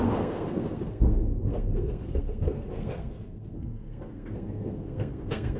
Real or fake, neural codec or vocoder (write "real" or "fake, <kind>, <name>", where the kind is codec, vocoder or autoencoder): fake, codec, SNAC